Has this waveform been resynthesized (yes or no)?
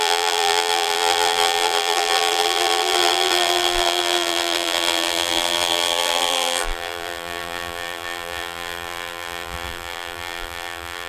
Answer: yes